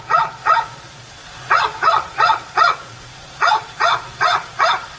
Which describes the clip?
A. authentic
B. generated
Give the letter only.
B